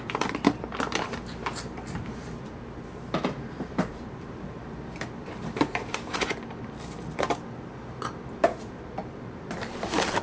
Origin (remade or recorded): remade